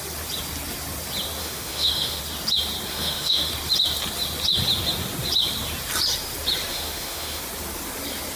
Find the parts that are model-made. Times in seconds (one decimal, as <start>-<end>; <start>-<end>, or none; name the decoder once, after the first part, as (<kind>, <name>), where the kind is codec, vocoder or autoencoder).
1.4-2.2 (autoencoder, DAC-VAE); 2.9-3.5; 6.7-7.4